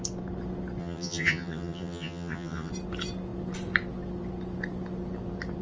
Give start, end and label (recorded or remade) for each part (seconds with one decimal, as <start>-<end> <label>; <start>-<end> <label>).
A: 0.0-0.8 recorded; 0.8-2.7 remade; 2.7-5.6 recorded